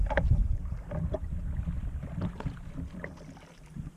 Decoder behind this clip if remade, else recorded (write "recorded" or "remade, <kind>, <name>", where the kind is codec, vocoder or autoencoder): recorded